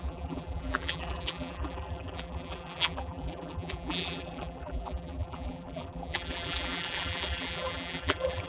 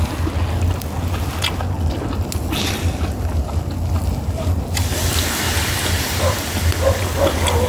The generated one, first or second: first